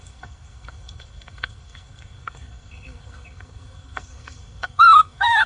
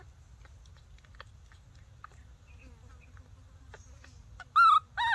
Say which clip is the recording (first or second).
second